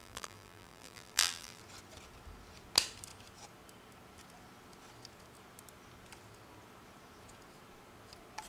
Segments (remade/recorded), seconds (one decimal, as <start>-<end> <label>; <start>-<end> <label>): 0.0-1.6 remade; 1.6-8.5 recorded